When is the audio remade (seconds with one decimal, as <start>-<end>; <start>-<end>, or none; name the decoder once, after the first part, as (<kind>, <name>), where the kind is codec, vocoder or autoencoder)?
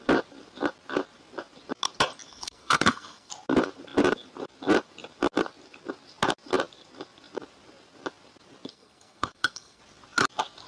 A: 2.3-3.3 (codec, SNAC); 8.7-9.8